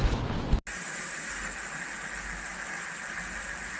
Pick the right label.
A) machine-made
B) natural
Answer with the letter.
B